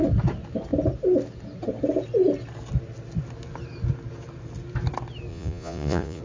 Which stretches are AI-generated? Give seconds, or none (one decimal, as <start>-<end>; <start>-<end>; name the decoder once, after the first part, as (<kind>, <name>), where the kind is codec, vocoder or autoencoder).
5.3-6.2 (vocoder, Vocos)